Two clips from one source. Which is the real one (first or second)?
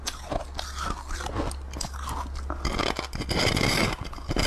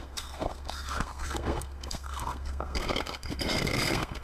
first